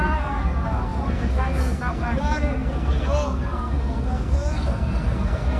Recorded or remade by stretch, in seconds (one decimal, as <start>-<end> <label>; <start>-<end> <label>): 0.0-5.6 remade